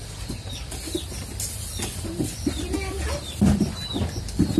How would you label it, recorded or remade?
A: recorded